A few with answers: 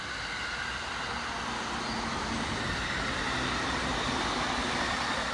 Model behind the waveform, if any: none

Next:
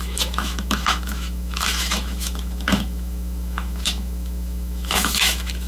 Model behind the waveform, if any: autoencoder, DAC-VAE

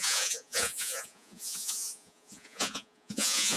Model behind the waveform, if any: vocoder, Vocos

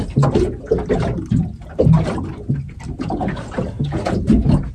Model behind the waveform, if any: none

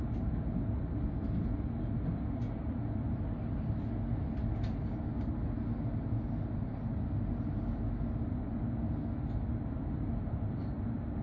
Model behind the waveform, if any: none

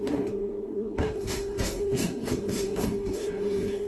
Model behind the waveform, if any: codec, SNAC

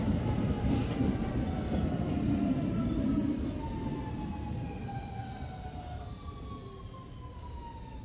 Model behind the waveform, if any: none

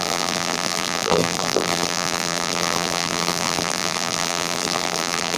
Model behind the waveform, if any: vocoder, BigVGAN v2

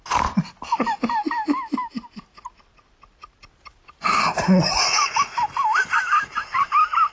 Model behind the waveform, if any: none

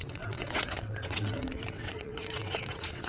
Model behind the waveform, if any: vocoder, WaveNeXt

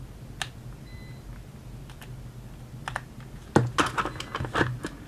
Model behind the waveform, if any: none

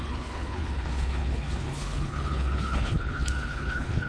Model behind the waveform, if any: codec, HILCodec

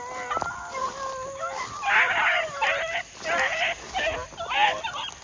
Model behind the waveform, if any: none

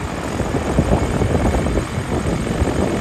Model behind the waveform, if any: none